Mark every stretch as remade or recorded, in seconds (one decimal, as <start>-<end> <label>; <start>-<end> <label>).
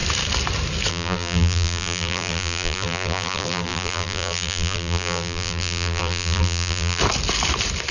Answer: 0.0-0.9 recorded; 0.9-7.0 remade; 7.0-7.9 recorded